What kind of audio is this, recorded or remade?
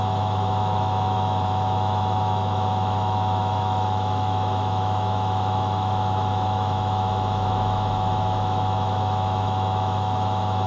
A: remade